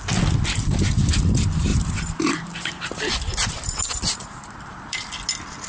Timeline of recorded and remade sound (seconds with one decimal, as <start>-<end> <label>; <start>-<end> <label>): 0.0-1.7 recorded; 1.7-5.1 remade; 5.1-5.7 recorded